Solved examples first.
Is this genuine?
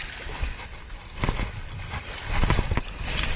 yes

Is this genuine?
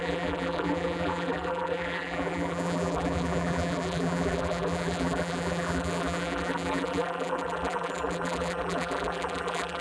no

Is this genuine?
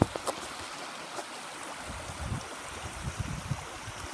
yes